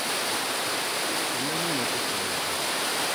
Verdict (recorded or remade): recorded